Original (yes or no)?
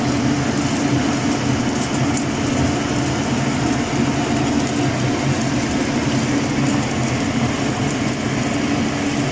yes